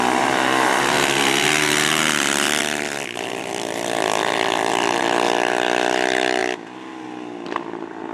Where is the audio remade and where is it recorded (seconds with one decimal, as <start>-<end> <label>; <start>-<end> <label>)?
0.0-6.4 remade; 6.4-7.6 recorded; 7.6-8.1 remade